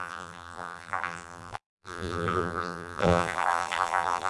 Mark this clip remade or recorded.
remade